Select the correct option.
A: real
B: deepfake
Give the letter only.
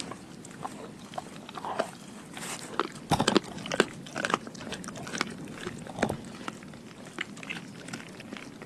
A